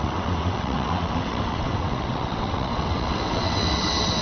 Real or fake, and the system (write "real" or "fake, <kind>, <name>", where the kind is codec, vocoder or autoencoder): fake, vocoder, WaveNeXt